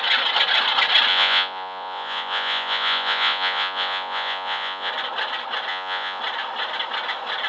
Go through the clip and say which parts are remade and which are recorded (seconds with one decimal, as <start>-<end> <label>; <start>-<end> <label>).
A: 0.0-1.1 recorded; 1.1-4.9 remade; 4.9-5.7 recorded; 5.7-6.2 remade; 6.2-7.5 recorded